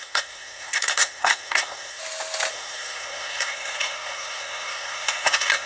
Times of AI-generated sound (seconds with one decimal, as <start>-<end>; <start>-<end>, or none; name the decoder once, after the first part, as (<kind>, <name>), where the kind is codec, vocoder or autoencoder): 0.0-2.0 (codec, SNAC); 2.5-5.7